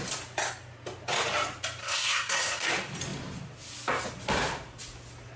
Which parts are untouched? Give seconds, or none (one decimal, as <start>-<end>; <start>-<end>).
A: 0.0-1.8; 2.7-5.4